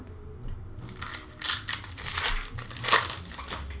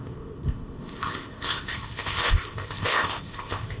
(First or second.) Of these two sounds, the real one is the first